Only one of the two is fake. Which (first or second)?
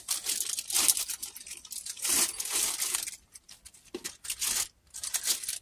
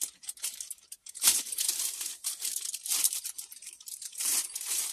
second